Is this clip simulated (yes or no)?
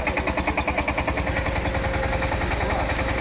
no